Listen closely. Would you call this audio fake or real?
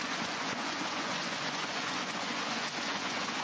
fake